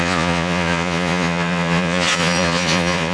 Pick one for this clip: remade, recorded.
remade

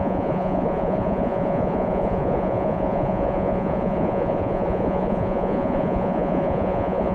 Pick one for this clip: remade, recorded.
remade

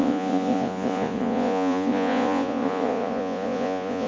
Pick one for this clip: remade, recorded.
remade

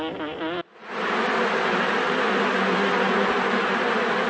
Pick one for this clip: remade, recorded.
recorded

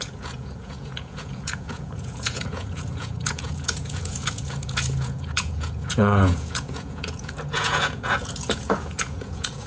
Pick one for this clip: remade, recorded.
remade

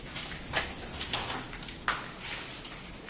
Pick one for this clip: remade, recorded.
recorded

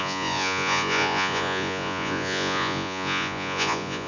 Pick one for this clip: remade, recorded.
remade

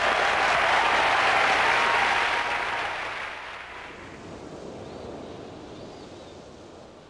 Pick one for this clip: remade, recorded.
recorded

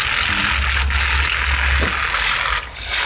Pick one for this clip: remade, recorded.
recorded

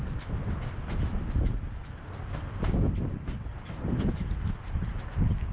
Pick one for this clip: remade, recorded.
recorded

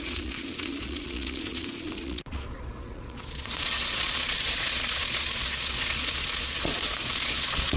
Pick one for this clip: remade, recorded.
remade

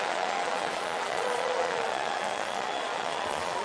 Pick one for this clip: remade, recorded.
remade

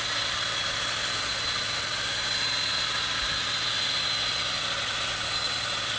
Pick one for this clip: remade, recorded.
recorded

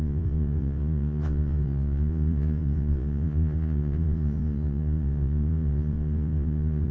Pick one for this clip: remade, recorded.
remade